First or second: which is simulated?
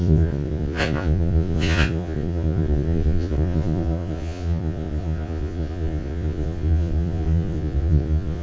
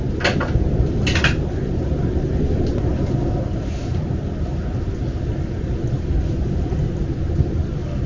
first